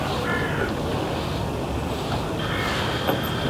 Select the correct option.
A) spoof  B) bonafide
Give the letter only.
B